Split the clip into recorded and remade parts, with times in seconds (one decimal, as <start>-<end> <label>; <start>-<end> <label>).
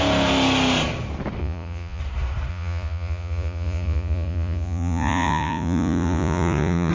0.0-1.4 recorded; 1.4-2.0 remade; 2.0-2.5 recorded; 2.5-6.9 remade